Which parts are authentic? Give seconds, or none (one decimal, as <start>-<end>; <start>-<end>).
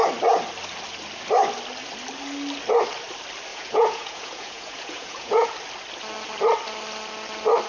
0.0-3.5; 5.5-7.7